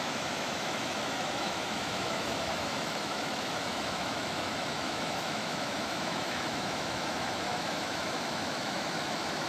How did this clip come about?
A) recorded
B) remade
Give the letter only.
B